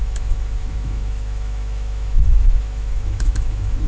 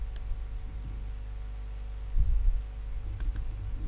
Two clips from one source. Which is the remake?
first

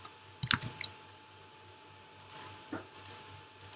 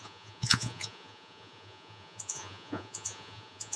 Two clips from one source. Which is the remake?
second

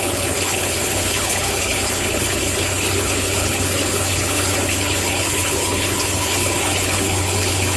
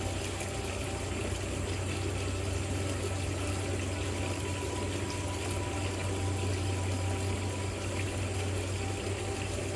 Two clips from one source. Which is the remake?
first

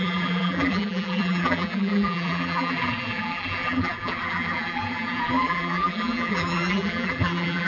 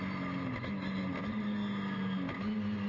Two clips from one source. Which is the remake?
first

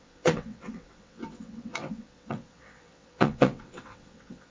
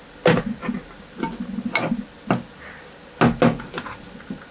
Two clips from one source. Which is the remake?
first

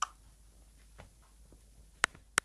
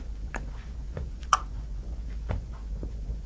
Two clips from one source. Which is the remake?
second